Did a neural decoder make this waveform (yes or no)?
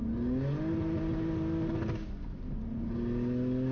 no